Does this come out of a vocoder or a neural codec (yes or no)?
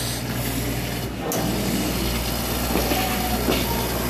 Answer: no